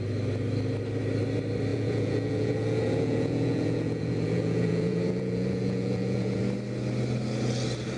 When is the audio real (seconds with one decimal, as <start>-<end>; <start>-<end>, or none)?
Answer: 0.0-1.7; 6.4-8.0